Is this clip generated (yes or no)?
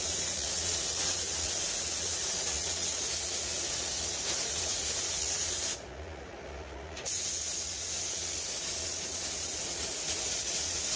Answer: yes